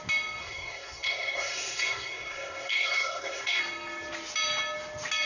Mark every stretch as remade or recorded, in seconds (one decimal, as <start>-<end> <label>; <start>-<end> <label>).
0.0-0.4 recorded; 0.4-3.6 remade; 3.6-5.3 recorded